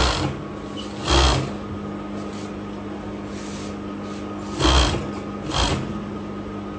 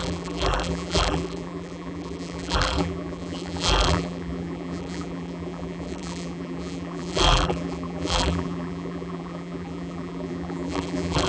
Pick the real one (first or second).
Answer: first